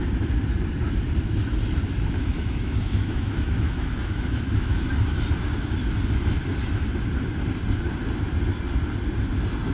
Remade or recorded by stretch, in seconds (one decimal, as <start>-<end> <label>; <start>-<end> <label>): 0.0-2.2 recorded; 2.2-4.9 remade; 4.9-9.7 recorded